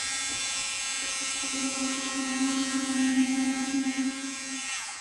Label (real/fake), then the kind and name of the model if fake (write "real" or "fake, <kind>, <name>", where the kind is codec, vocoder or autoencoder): fake, vocoder, Vocos